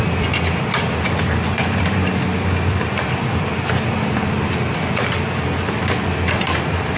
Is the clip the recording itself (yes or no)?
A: no